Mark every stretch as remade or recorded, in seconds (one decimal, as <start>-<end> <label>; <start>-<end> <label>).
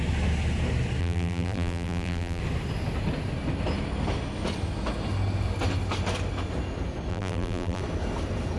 0.0-1.0 recorded; 1.0-2.4 remade; 2.4-7.1 recorded; 7.1-7.8 remade; 7.8-8.6 recorded